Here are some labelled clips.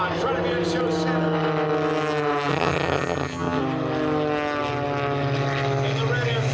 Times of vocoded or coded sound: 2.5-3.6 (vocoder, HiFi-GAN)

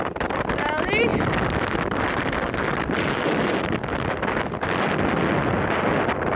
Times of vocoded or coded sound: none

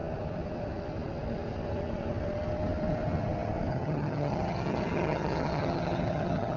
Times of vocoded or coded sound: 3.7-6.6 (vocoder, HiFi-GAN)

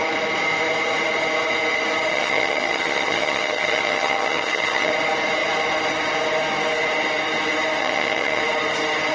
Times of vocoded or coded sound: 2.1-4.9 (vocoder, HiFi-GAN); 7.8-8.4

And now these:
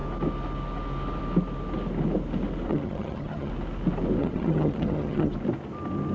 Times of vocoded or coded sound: 2.7-3.5 (vocoder, HiFi-GAN); 4.2-5.3